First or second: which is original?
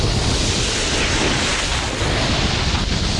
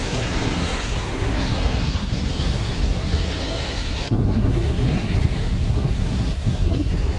first